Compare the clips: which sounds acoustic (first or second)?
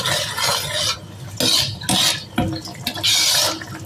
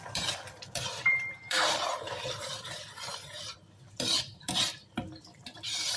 first